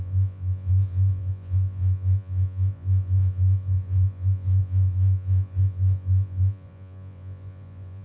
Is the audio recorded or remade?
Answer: remade